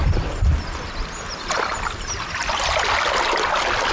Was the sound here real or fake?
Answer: real